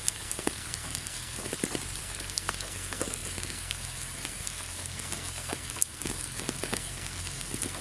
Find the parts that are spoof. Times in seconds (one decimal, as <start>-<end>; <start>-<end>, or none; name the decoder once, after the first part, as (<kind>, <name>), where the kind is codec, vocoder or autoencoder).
0.0-1.5 (codec, SNAC); 2.0-7.8